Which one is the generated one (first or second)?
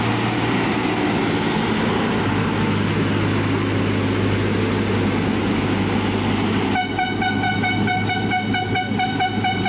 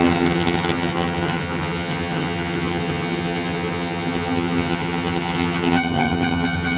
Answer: second